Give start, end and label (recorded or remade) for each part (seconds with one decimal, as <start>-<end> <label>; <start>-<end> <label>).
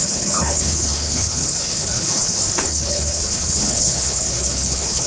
0.0-5.1 remade